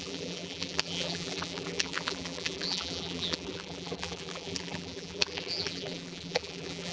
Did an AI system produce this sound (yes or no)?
yes